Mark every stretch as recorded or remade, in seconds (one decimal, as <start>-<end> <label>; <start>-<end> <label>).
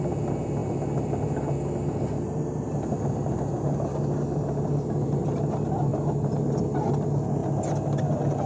0.0-8.5 recorded